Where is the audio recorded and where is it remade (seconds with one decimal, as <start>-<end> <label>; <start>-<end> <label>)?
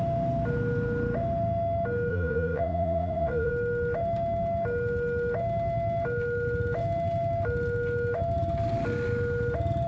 0.0-2.1 recorded; 2.1-3.5 remade; 3.5-9.9 recorded